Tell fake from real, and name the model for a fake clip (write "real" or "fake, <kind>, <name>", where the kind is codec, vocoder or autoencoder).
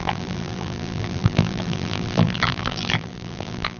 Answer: fake, vocoder, BigVGAN v2